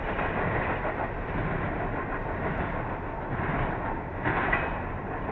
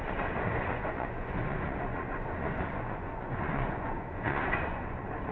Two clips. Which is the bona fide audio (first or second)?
first